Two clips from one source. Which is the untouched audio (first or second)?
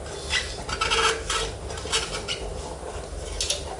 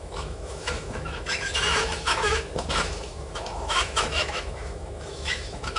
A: first